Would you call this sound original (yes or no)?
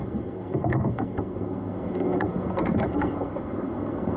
no